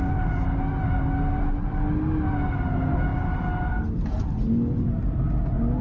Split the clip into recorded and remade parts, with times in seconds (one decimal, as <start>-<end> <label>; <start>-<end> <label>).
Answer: 0.0-5.8 recorded